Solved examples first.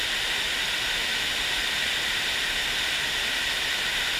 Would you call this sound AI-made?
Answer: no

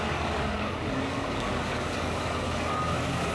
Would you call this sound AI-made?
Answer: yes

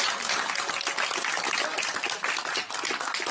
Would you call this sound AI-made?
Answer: no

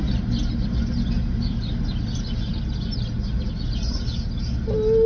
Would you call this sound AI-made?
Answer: no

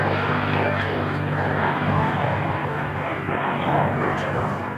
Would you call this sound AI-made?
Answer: yes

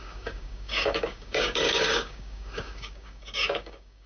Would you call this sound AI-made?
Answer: yes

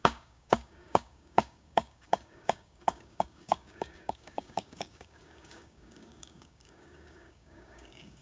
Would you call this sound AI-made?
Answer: yes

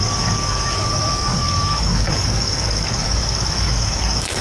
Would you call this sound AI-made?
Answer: yes